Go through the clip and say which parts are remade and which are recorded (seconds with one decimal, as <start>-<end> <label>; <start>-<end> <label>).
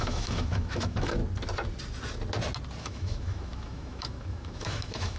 0.0-1.2 remade; 1.2-2.8 recorded; 2.8-5.2 remade